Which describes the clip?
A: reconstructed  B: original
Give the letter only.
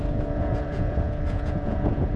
A